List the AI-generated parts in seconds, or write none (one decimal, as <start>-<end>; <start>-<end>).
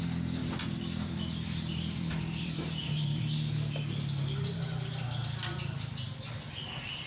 0.4-3.2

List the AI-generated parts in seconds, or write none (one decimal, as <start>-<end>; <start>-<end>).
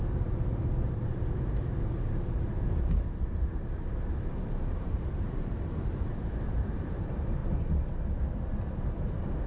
0.0-7.4; 8.8-9.5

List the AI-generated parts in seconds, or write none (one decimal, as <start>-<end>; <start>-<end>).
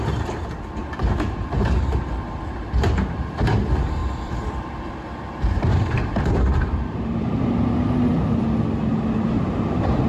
0.8-3.5; 4.0-7.3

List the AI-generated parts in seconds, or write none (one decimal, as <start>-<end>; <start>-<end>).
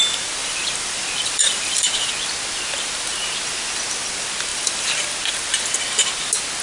0.4-2.1; 4.5-5.0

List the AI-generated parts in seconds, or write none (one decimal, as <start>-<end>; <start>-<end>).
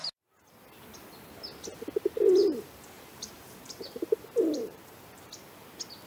2.4-5.3